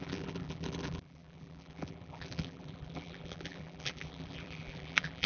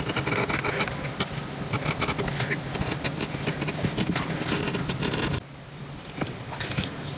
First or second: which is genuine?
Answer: second